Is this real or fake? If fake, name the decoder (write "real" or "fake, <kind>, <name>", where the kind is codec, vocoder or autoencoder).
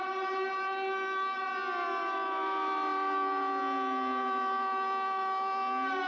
real